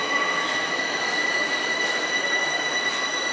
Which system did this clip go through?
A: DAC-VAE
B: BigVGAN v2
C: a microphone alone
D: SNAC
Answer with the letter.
A